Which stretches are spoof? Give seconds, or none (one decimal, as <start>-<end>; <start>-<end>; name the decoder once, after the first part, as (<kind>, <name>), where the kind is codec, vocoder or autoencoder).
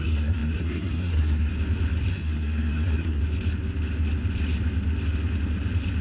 0.0-1.5 (codec, SNAC); 2.1-3.2